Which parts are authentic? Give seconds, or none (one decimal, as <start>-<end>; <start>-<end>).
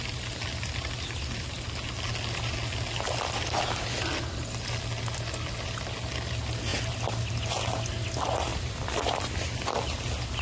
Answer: 0.0-8.5; 9.5-10.4